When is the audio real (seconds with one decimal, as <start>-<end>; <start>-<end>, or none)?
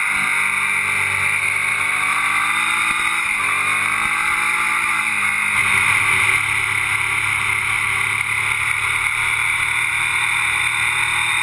0.0-1.7; 3.2-11.4